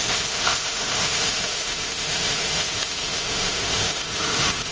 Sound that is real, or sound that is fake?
fake